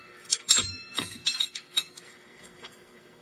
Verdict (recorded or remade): remade